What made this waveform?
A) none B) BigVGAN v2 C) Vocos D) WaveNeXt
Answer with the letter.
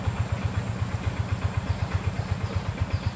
A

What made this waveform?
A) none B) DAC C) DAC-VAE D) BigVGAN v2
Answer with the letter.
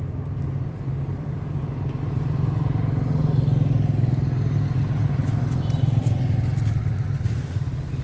A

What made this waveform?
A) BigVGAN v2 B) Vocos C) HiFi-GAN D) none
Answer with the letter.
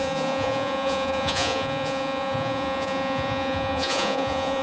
B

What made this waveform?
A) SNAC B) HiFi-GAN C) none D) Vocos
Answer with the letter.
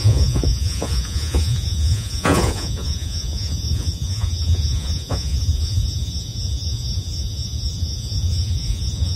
D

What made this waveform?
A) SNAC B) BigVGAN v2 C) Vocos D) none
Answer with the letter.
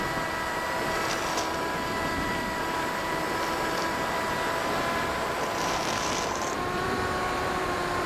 B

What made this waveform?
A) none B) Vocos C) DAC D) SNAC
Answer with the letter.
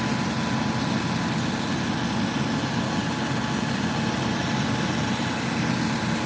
A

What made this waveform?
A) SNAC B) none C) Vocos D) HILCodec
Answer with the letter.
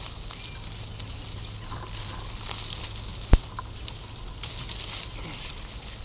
B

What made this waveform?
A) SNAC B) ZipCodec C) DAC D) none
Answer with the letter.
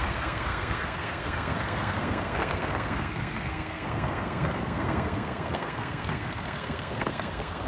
A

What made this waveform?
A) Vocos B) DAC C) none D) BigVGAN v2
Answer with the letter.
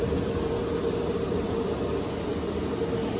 C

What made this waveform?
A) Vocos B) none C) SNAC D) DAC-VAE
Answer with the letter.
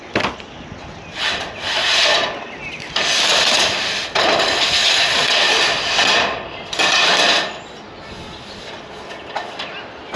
B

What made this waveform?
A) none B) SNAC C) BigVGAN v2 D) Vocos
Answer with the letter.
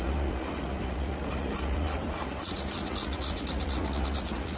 D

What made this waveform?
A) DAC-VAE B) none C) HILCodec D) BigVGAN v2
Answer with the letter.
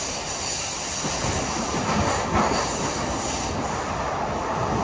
B